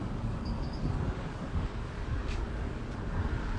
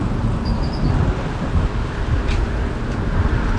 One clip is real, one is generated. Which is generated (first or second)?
first